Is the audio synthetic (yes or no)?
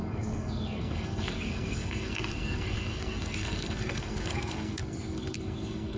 yes